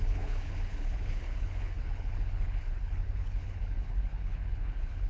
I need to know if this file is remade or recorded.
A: remade